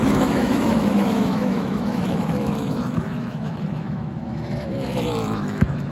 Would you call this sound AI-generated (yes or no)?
yes